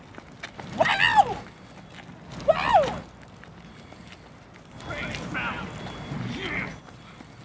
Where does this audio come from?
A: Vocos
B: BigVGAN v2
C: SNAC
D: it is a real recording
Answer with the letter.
D